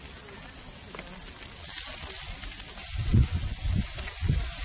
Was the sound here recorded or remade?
recorded